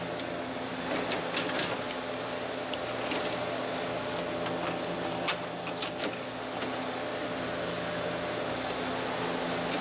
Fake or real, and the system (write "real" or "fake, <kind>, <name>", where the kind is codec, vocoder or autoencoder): real